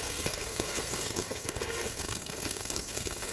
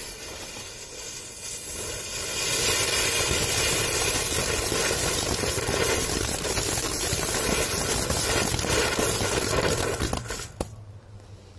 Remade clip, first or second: first